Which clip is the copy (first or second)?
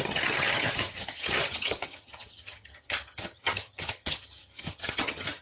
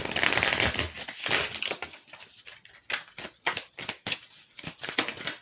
first